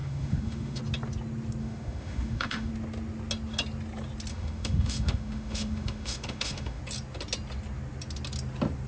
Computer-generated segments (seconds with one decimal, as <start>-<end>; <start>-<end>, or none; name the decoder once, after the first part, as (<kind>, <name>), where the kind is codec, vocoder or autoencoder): 0.0-0.8 (autoencoder, DAC-VAE); 1.6-2.7; 4.3-6.8